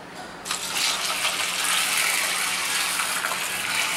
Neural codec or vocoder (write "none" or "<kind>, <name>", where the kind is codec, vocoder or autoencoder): none